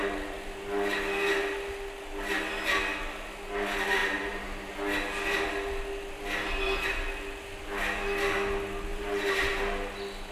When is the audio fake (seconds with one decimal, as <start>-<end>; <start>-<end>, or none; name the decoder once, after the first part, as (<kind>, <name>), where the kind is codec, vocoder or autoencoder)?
4.0-4.7 (vocoder, BigVGAN v2); 8.9-9.6

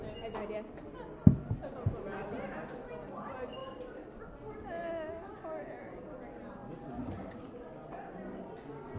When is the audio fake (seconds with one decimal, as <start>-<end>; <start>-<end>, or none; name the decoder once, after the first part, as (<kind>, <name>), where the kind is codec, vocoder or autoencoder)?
6.6-7.3 (vocoder, BigVGAN v2)

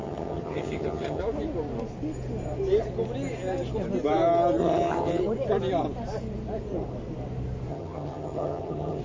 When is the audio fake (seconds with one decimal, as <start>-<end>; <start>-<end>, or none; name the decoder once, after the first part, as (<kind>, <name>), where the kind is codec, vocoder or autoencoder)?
0.0-1.2 (vocoder, HiFi-GAN); 4.6-5.2; 7.7-9.0